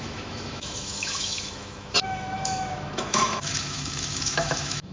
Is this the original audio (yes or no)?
no